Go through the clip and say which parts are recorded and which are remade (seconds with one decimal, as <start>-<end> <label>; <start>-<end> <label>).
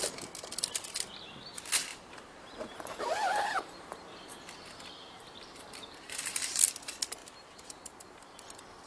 0.0-1.9 recorded; 1.9-6.6 remade; 6.6-7.2 recorded; 7.2-8.4 remade; 8.4-8.9 recorded